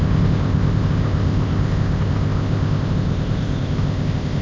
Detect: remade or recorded remade